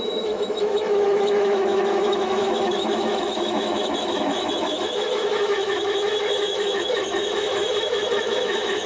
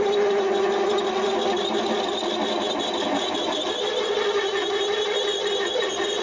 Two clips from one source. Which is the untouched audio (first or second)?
second